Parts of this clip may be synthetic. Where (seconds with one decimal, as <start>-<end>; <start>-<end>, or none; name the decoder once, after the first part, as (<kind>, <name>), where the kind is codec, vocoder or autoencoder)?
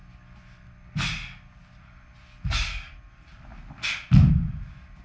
none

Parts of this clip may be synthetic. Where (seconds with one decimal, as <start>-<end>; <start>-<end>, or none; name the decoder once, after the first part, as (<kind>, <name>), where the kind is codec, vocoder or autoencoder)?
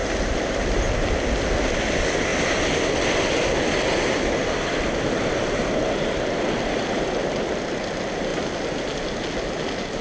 0.0-1.1 (vocoder, BigVGAN v2)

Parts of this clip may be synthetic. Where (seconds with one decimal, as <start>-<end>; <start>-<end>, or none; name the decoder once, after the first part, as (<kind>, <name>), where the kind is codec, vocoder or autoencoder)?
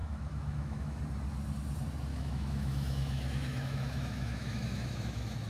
0.0-1.0 (autoencoder, DAC-VAE); 2.1-5.5